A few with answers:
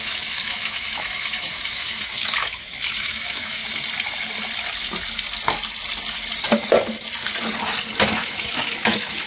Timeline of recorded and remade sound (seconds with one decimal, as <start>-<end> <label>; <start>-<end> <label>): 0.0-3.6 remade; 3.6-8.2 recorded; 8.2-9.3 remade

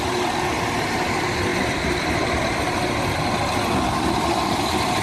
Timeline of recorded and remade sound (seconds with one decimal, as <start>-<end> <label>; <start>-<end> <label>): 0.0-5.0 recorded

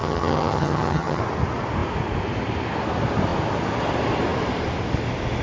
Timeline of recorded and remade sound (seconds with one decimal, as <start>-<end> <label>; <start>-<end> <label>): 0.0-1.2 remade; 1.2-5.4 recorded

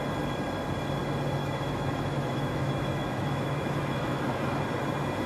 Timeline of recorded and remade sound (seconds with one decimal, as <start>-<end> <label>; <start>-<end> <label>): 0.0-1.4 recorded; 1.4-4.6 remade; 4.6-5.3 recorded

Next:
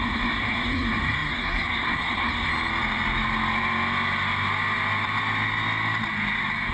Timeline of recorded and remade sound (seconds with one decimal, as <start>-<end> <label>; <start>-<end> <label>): 0.0-2.5 remade; 2.5-6.7 recorded

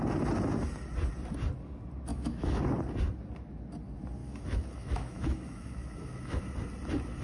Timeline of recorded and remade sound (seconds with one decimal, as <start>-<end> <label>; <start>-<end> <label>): 0.0-2.1 recorded; 2.1-2.6 remade; 2.6-4.2 recorded; 4.2-6.4 remade; 6.4-7.2 recorded

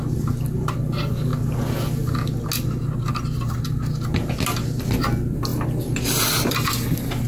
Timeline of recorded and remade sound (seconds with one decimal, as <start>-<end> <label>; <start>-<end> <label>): 0.0-7.3 recorded